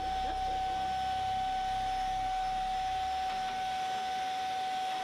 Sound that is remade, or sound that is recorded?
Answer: recorded